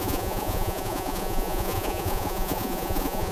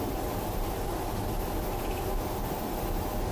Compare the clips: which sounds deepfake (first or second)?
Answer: first